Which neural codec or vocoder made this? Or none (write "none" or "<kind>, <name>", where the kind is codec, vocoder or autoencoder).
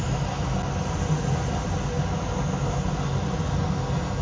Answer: none